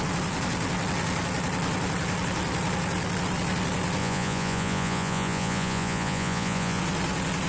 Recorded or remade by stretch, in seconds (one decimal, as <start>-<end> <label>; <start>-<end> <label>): 0.0-4.0 recorded; 4.0-6.8 remade; 6.8-7.5 recorded